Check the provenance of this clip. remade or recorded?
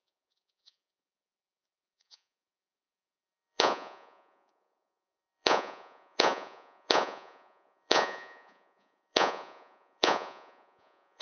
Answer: remade